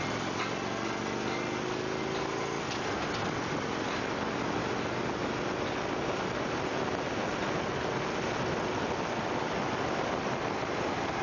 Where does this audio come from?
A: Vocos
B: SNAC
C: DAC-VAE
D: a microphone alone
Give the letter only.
D